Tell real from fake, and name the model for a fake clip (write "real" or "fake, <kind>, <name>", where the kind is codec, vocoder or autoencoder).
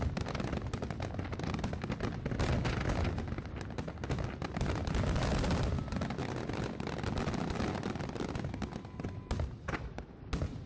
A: real